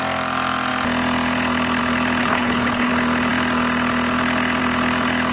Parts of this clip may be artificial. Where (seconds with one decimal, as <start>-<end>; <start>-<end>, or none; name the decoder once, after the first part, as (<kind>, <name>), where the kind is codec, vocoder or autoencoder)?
2.2-2.9 (codec, HILCodec)